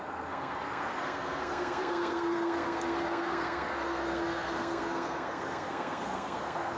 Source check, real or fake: fake